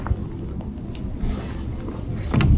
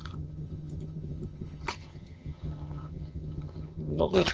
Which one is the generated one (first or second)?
second